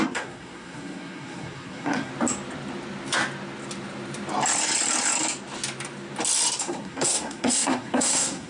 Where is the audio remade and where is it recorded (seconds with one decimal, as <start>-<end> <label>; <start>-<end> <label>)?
0.0-2.1 remade; 2.1-6.6 recorded; 6.6-8.5 remade